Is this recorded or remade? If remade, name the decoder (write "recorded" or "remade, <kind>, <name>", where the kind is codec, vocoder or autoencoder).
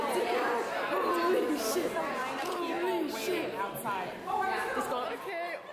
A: recorded